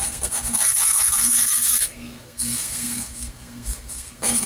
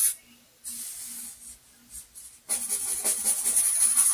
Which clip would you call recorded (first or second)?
second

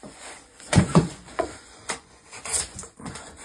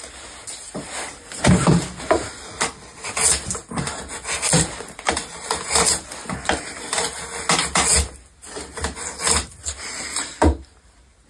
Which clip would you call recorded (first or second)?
second